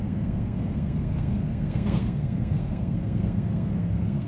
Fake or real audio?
fake